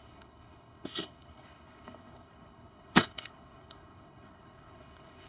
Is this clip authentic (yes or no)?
no